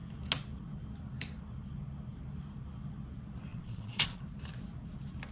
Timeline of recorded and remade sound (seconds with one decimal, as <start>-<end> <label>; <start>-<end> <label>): 0.0-3.5 recorded; 3.5-4.2 remade; 4.2-5.3 recorded

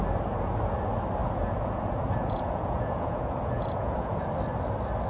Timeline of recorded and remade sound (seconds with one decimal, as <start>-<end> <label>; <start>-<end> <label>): 0.0-1.2 recorded; 1.2-4.3 remade; 4.3-5.1 recorded

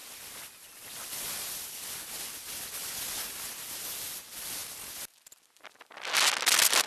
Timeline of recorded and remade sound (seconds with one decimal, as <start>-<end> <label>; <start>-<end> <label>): 0.0-6.9 recorded

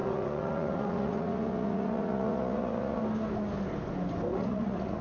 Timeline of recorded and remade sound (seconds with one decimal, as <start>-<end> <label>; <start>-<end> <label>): 0.0-3.0 remade; 3.0-4.3 recorded; 4.3-5.0 remade

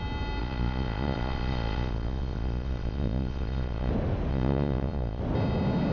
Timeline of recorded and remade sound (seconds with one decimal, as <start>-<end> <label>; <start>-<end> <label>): 0.0-0.4 recorded; 0.4-3.9 remade; 3.9-4.3 recorded; 4.3-5.2 remade; 5.2-5.9 recorded

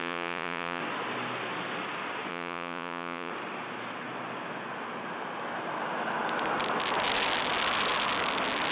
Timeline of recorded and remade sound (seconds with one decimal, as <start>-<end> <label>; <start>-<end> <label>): 0.0-0.8 remade; 0.8-2.3 recorded; 2.3-3.3 remade; 3.3-8.7 recorded